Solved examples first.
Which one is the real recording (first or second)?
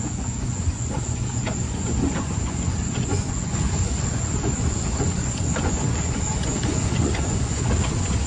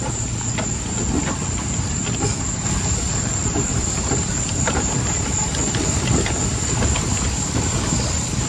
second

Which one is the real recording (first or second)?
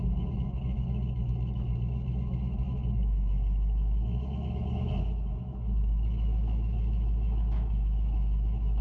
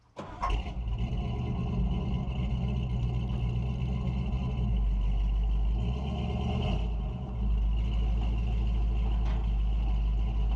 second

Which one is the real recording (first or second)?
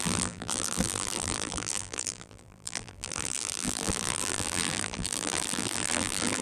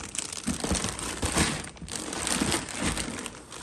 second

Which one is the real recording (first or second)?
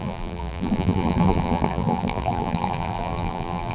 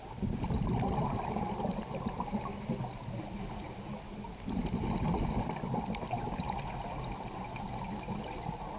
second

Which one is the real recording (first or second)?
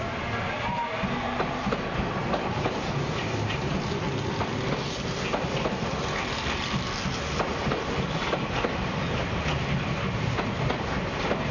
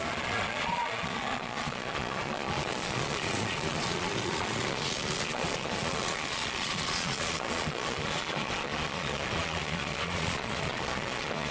first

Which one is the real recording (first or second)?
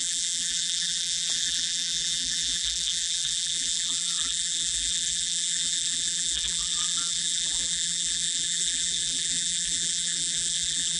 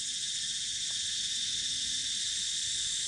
second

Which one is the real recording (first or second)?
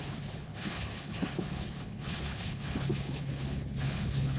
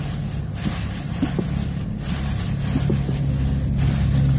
second